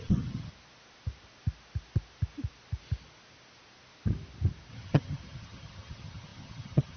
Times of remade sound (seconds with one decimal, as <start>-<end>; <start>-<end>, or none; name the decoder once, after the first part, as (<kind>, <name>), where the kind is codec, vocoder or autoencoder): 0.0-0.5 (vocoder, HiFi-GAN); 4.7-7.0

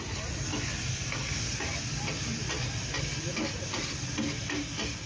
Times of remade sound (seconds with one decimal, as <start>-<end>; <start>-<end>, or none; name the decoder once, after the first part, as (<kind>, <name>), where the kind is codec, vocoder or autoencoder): none

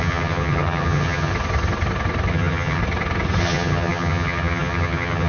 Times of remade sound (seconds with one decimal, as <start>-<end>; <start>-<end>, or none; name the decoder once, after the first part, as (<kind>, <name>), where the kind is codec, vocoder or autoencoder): 0.0-1.3 (vocoder, HiFi-GAN); 2.3-2.8; 3.4-5.3

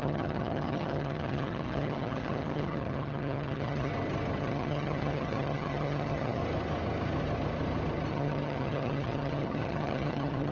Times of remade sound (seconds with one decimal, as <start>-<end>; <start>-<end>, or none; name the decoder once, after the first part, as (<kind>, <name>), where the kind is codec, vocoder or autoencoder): 0.0-3.9 (vocoder, HiFi-GAN); 4.4-6.4; 8.1-10.5